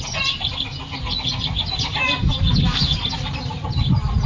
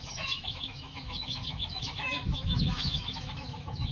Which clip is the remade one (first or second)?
second